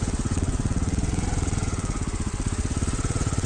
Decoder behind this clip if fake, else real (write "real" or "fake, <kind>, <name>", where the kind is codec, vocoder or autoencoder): fake, vocoder, WaveNeXt